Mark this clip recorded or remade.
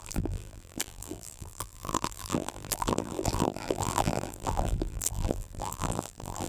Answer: remade